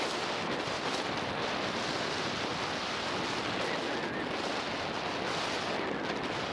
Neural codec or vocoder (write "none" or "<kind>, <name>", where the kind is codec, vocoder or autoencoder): none